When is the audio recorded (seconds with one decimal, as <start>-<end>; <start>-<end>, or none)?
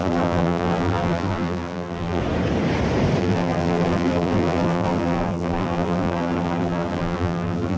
2.2-3.2